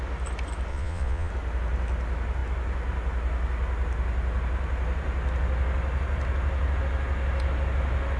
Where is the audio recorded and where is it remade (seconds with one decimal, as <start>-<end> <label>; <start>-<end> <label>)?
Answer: 0.0-0.7 recorded; 0.7-1.3 remade; 1.3-8.2 recorded